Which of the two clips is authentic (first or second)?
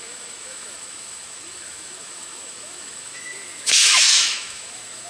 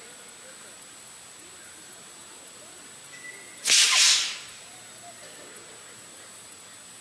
second